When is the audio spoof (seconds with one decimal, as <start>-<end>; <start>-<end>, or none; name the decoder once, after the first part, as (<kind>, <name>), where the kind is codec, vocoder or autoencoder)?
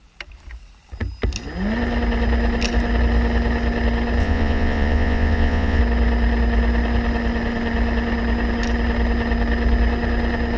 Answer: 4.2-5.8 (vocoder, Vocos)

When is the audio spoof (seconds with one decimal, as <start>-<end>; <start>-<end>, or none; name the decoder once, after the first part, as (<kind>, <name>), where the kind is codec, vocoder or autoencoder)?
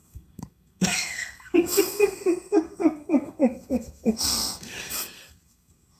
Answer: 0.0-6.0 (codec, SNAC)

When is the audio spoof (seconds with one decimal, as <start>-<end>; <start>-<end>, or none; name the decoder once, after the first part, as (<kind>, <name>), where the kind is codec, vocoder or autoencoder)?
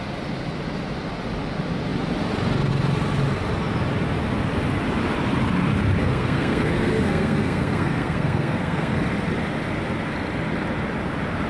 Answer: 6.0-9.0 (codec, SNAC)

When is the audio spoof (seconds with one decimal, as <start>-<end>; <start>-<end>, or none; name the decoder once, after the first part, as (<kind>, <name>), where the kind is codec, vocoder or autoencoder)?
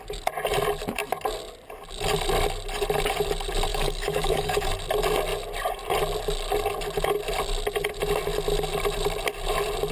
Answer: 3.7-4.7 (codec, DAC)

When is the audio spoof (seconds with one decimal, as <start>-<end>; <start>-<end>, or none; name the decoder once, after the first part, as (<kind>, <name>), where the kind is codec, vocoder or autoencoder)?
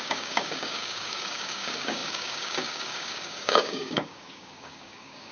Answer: 0.0-5.3 (codec, DAC)